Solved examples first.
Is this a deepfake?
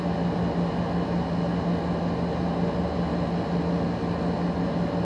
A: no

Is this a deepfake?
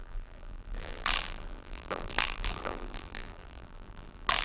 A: yes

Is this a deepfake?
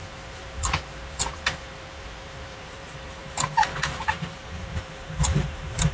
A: yes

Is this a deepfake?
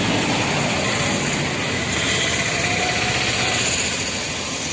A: no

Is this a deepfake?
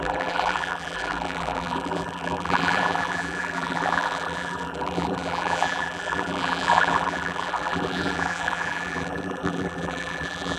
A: yes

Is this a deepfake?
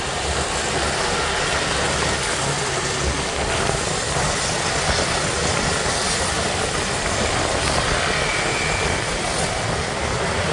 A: no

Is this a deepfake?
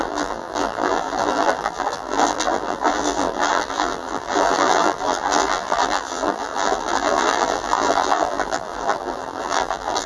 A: yes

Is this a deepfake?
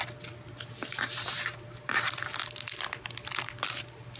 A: no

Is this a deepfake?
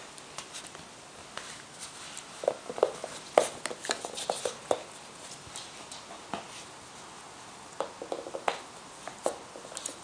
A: no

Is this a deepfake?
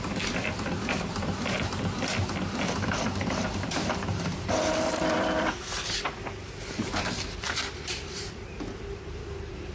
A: yes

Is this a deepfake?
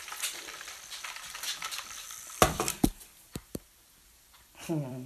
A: yes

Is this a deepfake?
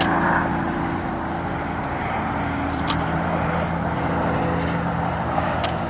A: yes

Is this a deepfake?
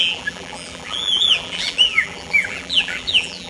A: yes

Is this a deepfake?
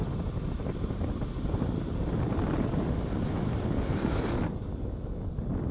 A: no